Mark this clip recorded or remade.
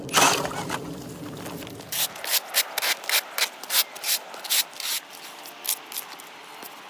recorded